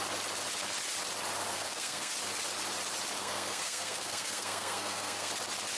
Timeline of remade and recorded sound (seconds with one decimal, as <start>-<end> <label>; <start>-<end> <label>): 0.0-1.5 recorded; 1.5-2.1 remade; 2.1-3.2 recorded; 3.2-5.3 remade; 5.3-5.8 recorded